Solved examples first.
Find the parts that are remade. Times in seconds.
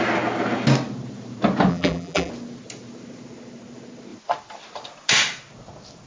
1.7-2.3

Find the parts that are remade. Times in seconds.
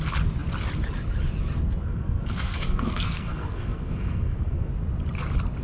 1.8-4.7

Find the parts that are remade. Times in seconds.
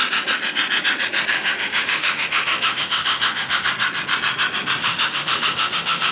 1.3-3.7; 4.8-6.1